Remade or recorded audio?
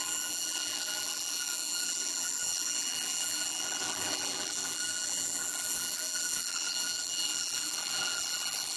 remade